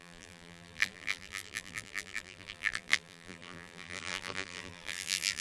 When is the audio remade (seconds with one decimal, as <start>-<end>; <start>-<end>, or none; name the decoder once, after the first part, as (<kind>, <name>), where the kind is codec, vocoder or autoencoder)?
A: 0.0-5.4 (vocoder, BigVGAN v2)